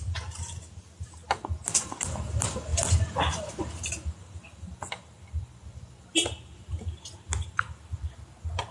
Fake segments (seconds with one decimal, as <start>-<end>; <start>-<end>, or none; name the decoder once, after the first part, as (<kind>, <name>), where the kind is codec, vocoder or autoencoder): none